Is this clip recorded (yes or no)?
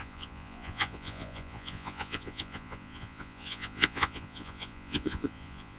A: no